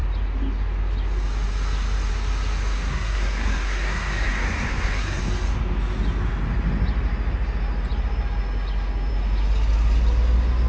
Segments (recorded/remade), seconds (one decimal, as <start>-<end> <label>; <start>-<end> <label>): 0.0-2.9 recorded; 2.9-5.2 remade; 5.2-10.7 recorded